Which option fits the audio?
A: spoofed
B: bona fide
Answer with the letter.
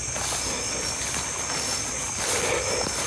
B